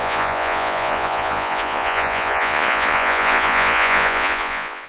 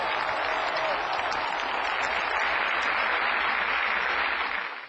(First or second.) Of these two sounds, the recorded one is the second